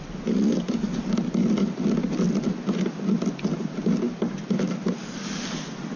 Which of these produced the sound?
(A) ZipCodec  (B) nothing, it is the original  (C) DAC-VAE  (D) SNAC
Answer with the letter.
B